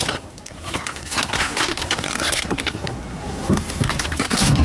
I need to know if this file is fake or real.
fake